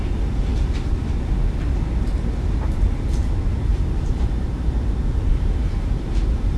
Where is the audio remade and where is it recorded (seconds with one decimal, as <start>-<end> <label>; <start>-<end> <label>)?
0.0-3.7 recorded; 3.7-5.7 remade; 5.7-6.6 recorded